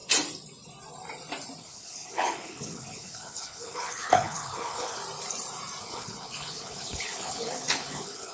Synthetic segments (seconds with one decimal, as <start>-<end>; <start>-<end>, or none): 1.6-5.0; 5.8-8.3